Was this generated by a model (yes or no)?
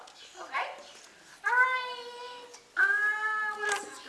no